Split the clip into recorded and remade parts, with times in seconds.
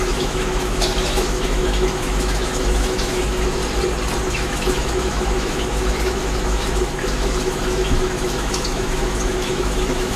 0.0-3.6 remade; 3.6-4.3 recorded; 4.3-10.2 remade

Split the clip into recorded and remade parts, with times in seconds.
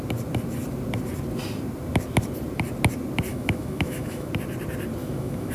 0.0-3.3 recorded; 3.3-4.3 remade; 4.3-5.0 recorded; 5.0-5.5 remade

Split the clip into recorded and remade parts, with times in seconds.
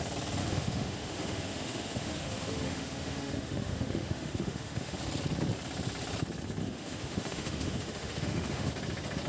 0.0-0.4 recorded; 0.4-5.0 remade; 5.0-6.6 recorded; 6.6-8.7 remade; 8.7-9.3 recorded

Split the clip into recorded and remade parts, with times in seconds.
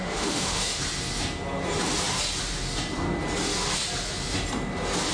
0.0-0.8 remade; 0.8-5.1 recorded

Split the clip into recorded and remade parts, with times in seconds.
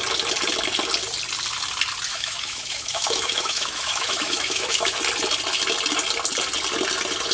0.0-2.1 recorded; 2.1-5.0 remade; 5.0-7.3 recorded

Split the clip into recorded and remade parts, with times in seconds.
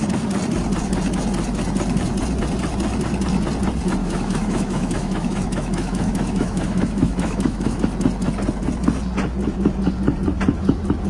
0.0-4.0 recorded; 4.0-7.8 remade; 7.8-11.1 recorded